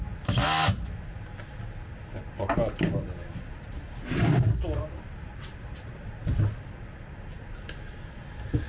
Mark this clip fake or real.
real